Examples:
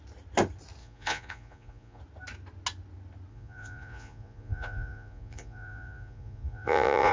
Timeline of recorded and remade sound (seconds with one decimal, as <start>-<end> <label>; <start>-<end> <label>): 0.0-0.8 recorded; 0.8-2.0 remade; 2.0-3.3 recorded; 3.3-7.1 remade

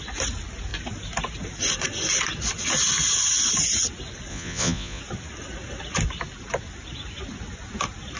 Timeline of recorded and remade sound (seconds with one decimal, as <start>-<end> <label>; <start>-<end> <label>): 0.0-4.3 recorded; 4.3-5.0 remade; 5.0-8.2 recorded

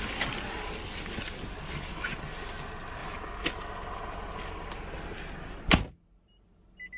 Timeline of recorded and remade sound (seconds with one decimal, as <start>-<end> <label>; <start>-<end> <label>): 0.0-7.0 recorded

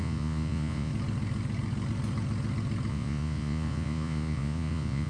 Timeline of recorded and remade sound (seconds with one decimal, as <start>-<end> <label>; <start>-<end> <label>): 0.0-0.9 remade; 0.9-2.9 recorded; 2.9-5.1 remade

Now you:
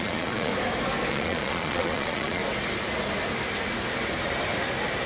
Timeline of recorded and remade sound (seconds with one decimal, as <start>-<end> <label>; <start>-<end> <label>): 0.0-0.5 remade; 0.5-1.1 recorded; 1.1-2.4 remade; 2.4-5.1 recorded